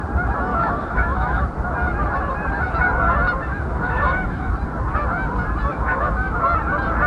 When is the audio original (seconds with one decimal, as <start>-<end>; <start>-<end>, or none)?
0.0-0.5; 1.4-3.5; 4.5-5.7; 6.4-7.1